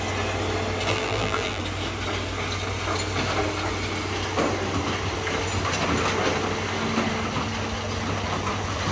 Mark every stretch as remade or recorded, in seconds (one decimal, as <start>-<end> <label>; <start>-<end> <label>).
0.0-0.9 recorded; 0.9-1.6 remade; 1.6-8.9 recorded